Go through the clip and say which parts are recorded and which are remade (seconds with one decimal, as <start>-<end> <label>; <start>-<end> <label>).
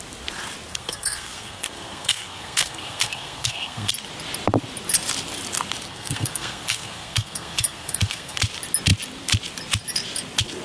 0.0-0.7 recorded; 0.7-3.9 remade; 3.9-5.9 recorded; 5.9-8.4 remade; 8.4-10.6 recorded